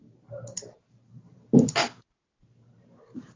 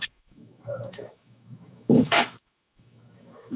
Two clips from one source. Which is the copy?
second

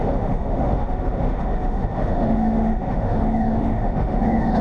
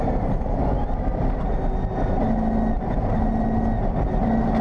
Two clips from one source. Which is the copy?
first